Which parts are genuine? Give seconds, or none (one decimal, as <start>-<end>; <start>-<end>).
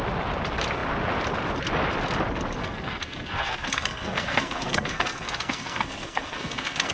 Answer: 0.0-2.6